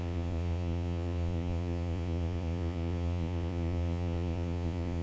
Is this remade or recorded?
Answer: remade